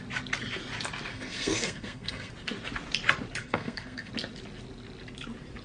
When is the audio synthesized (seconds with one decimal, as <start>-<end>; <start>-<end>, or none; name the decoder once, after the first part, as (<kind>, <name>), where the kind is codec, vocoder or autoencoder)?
1.1-2.3 (codec, SNAC); 3.4-4.1